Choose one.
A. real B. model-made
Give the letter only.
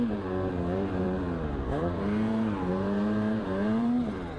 B